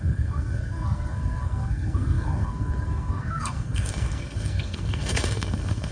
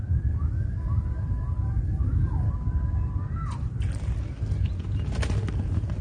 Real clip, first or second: second